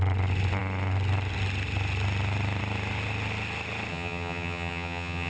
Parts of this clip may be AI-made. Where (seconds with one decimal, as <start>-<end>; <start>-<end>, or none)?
3.9-5.3